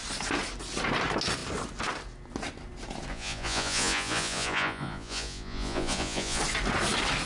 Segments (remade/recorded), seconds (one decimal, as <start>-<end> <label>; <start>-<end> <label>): 0.0-3.1 recorded; 3.1-6.4 remade; 6.4-7.3 recorded

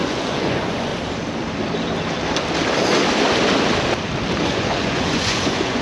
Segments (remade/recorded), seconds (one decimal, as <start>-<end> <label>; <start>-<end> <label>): 0.0-0.9 remade; 0.9-4.4 recorded; 4.4-5.8 remade

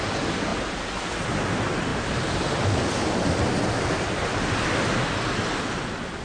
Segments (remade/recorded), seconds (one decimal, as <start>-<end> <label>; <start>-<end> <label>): 0.0-6.2 recorded

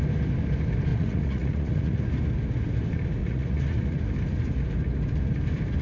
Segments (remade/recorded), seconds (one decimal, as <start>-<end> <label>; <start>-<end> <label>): 0.0-0.9 recorded; 0.9-2.0 remade; 2.0-3.2 recorded; 3.2-4.0 remade; 4.0-5.8 recorded

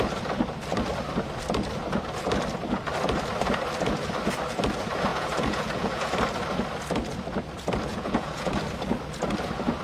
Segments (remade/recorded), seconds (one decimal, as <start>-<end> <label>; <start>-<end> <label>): 0.0-5.1 recorded; 5.1-6.1 remade; 6.1-7.9 recorded; 7.9-8.5 remade; 8.5-9.8 recorded

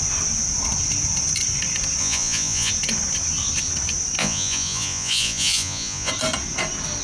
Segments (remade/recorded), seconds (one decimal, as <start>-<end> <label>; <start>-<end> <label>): 0.0-2.0 recorded; 2.0-2.7 remade; 2.7-4.2 recorded; 4.2-6.1 remade; 6.1-7.0 recorded

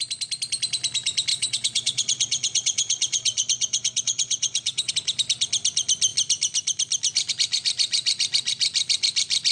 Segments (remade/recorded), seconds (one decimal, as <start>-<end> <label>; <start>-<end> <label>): 0.0-1.3 recorded; 1.3-4.9 remade; 4.9-9.5 recorded

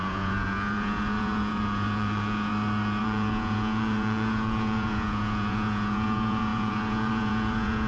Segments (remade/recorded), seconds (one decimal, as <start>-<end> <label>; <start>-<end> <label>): 0.0-2.5 remade; 2.5-3.0 recorded; 3.0-7.9 remade